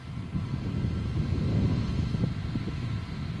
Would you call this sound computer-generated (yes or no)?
no